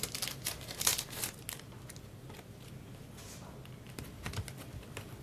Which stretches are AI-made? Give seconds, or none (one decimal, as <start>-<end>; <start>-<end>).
none